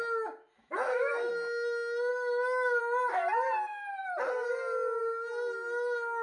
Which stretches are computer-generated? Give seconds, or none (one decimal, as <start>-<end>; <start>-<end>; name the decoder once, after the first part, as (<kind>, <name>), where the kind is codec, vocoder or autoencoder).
0.6-1.3 (autoencoder, DAC-VAE); 2.1-2.8